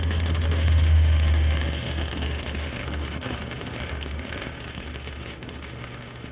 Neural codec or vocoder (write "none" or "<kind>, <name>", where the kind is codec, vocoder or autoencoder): autoencoder, DAC-VAE